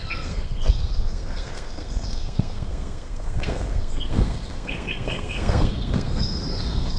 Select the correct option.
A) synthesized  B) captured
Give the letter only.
A